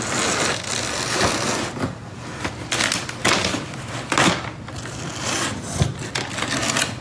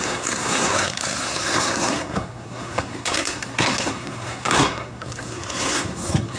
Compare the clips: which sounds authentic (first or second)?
first